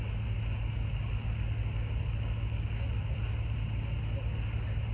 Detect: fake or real real